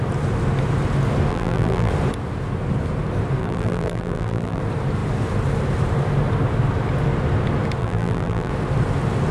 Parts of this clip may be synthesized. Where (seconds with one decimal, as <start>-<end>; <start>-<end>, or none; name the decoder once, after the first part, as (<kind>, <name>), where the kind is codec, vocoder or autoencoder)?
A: 1.3-1.9 (vocoder, BigVGAN v2); 3.4-4.6; 7.8-8.5